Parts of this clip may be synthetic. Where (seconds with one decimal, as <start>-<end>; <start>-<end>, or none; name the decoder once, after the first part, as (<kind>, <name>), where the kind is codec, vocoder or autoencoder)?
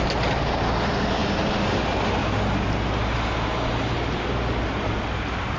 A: none